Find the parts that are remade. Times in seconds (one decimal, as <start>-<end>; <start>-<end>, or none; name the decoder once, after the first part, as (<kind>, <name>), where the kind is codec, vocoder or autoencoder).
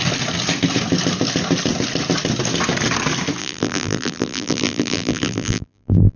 3.4-6.2 (vocoder, BigVGAN v2)